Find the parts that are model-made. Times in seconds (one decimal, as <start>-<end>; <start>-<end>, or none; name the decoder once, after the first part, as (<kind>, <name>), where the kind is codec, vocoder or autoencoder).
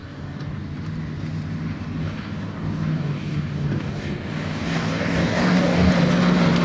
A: 0.0-0.6 (codec, DAC); 2.0-5.9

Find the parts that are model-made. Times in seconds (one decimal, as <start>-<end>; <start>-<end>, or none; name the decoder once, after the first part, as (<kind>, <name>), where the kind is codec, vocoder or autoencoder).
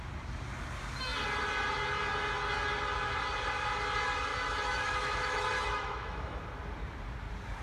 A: 4.3-6.4 (autoencoder, DAC-VAE)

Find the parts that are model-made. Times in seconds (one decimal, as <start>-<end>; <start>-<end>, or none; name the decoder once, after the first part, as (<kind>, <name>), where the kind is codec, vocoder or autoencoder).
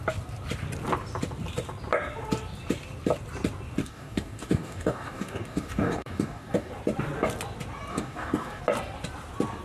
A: 3.8-6.7 (codec, DAC); 7.9-8.6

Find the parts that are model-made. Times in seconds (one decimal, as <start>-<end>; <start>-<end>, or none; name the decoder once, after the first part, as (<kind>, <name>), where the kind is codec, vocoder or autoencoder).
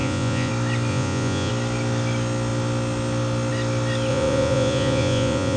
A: 0.0-0.5 (vocoder, Vocos); 0.9-1.5; 4.1-5.6